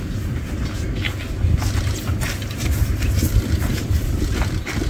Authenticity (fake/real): real